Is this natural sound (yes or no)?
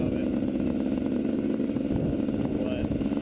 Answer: yes